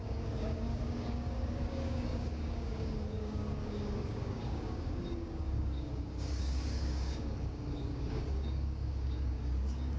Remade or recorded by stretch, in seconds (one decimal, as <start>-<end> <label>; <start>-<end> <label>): 0.0-10.0 remade